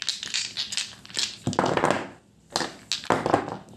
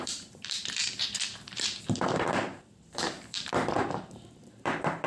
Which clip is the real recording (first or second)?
first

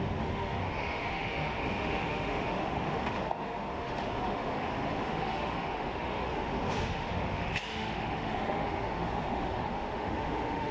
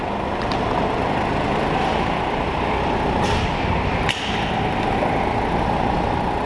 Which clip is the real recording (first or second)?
second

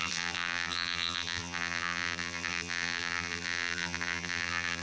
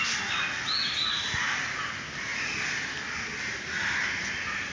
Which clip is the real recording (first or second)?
second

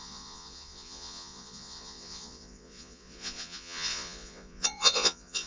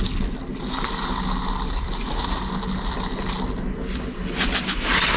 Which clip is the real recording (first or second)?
second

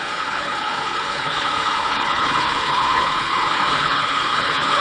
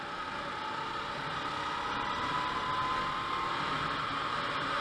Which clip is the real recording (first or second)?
second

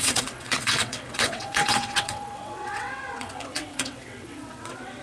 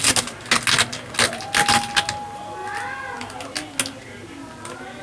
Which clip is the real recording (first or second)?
second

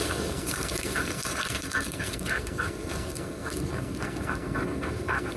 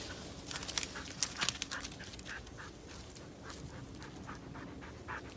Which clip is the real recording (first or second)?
second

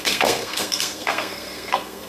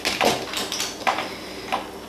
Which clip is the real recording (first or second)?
second